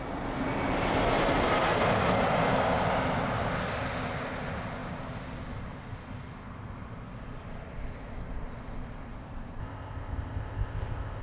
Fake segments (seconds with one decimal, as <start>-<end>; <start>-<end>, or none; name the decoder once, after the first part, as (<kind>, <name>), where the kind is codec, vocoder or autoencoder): 9.6-11.2 (codec, ZipCodec)